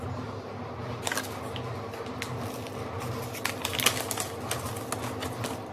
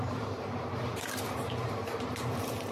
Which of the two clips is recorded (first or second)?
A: first